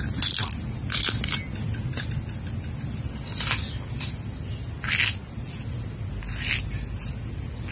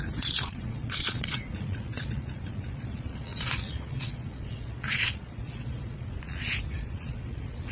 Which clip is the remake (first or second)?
second